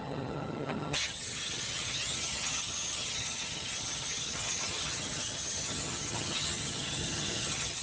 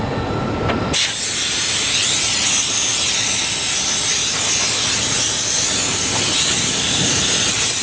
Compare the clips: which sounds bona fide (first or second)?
second